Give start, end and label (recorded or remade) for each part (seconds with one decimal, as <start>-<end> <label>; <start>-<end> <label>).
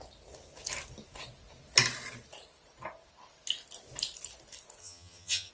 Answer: 0.0-4.8 recorded; 4.8-5.5 remade